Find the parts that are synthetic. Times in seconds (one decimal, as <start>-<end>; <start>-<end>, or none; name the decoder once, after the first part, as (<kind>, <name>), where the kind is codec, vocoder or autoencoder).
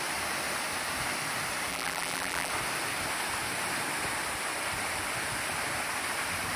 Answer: 1.7-2.5 (vocoder, BigVGAN v2)